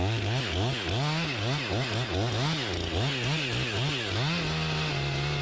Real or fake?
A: real